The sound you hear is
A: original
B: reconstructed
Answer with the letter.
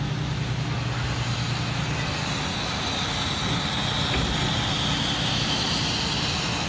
A